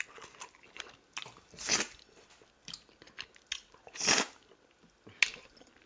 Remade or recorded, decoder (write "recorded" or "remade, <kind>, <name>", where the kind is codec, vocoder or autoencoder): recorded